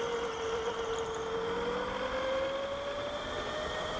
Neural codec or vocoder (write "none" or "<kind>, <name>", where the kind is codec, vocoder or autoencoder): none